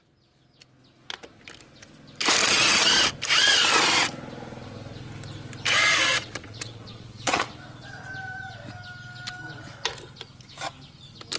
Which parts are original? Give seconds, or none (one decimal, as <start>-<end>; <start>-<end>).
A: 0.0-6.1; 7.5-11.4